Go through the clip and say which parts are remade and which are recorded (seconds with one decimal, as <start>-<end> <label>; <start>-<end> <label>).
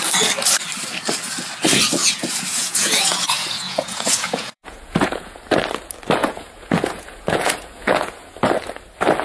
0.0-2.0 recorded; 2.0-5.4 remade; 5.4-6.2 recorded; 6.2-8.3 remade; 8.3-9.2 recorded